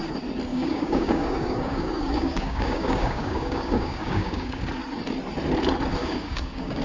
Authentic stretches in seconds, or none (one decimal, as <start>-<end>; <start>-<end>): 0.0-0.5; 4.6-6.0